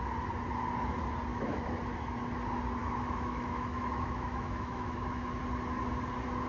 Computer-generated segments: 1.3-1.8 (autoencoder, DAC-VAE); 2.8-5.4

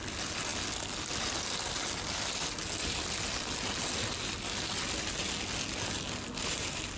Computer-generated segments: none

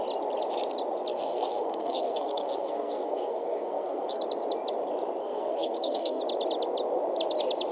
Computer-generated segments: 1.1-4.2 (codec, SNAC); 5.2-6.2

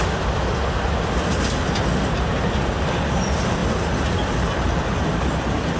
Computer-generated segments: none

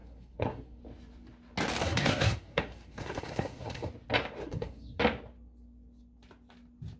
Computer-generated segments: 0.0-0.8 (codec, SNAC); 1.8-3.9; 4.4-5.0